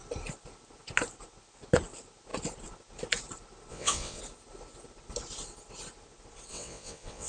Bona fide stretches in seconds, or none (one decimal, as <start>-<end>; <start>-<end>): 0.0-3.7; 4.2-6.5